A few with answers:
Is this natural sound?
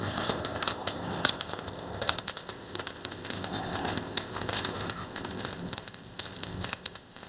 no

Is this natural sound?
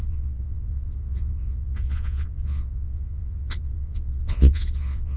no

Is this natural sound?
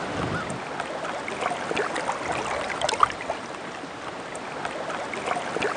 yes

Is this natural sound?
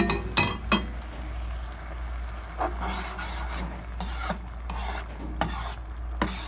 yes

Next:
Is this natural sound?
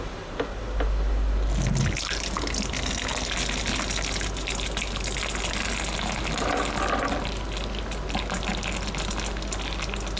yes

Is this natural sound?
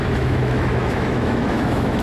no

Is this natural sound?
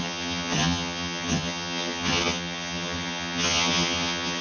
no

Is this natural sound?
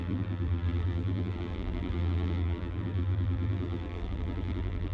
no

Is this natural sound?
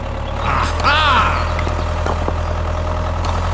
yes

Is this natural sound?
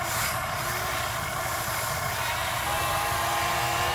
yes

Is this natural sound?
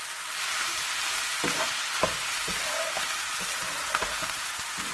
yes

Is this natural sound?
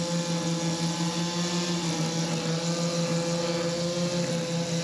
yes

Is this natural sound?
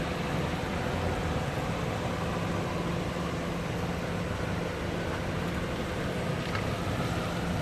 yes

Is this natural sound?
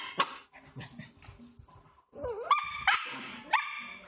yes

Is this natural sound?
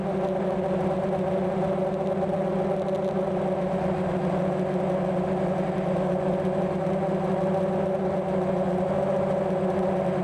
yes